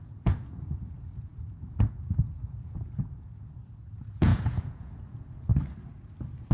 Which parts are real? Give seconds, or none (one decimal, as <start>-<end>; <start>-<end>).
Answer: 5.5-6.5